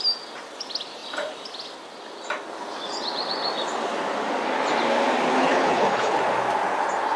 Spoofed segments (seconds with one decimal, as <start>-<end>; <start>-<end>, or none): 5.3-6.2

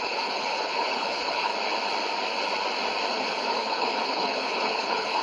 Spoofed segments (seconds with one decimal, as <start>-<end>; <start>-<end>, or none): 0.0-1.5; 3.1-5.2

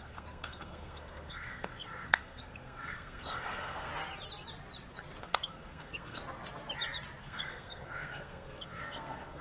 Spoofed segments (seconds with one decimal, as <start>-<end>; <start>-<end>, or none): 0.0-3.9; 5.2-6.2; 7.2-9.4